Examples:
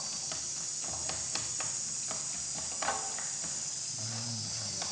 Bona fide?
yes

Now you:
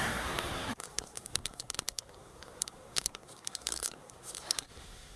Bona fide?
no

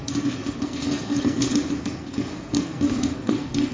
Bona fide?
no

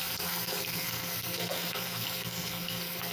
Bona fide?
no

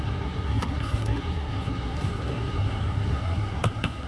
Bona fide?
no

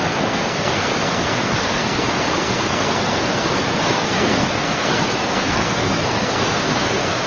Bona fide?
no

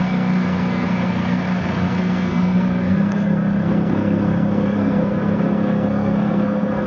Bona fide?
no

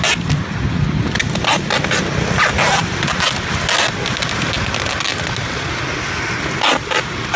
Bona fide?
yes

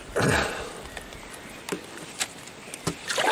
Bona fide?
yes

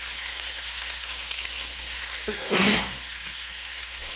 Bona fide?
no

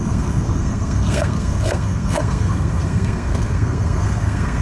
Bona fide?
no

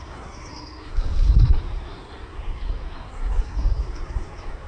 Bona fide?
no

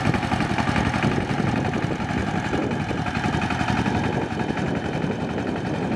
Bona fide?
yes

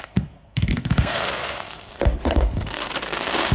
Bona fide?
no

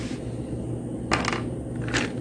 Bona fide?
yes